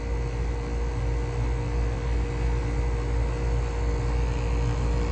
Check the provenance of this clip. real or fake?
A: real